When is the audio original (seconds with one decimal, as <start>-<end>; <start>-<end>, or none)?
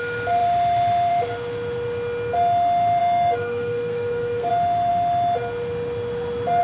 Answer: 0.0-3.0; 4.5-6.6